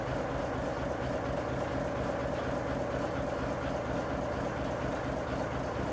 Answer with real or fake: real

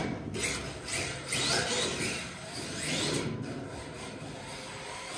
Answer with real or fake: real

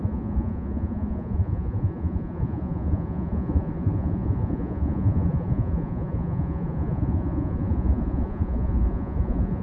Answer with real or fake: fake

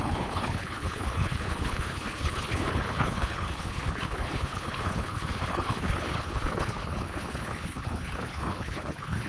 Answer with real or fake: fake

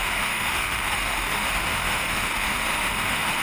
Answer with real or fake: fake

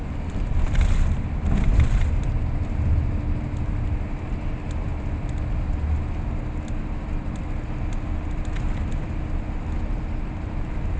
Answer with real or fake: real